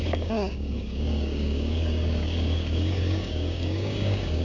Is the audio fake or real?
fake